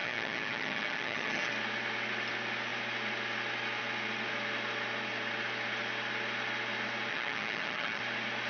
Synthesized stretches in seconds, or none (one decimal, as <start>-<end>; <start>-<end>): 0.0-1.5; 7.1-8.0